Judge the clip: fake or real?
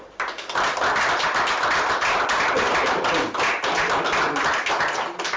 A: real